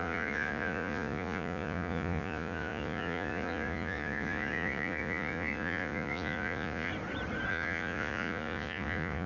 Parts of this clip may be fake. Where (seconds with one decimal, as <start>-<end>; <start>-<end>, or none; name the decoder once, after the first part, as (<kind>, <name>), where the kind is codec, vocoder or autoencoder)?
0.0-6.9 (vocoder, Vocos); 7.5-9.3